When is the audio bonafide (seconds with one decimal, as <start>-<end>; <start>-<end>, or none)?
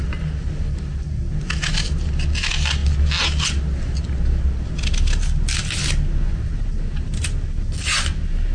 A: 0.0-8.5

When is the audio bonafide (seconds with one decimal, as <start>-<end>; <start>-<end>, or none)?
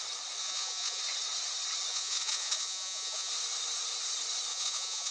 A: 0.0-0.4; 1.0-1.9; 3.3-4.5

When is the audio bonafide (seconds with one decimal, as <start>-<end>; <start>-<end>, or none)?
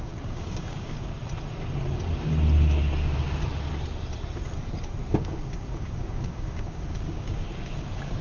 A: 1.2-5.1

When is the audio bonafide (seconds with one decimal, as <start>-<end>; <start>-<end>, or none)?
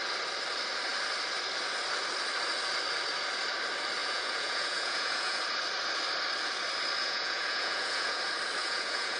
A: 0.0-4.0; 5.4-7.0; 8.2-8.6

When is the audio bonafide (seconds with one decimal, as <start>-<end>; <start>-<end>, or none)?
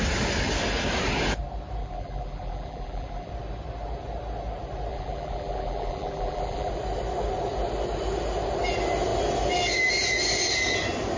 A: 0.0-1.8; 3.3-4.9; 6.7-11.2